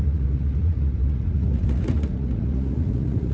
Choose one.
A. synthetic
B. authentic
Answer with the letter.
A